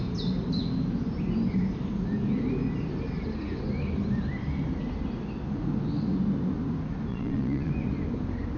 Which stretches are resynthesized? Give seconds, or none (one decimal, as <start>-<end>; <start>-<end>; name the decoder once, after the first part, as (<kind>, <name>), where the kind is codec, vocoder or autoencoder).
7.1-7.7 (vocoder, Vocos)